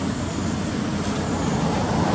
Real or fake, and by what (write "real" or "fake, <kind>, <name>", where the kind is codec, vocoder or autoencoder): real